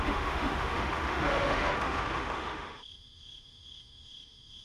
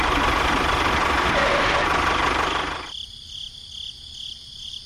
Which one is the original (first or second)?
second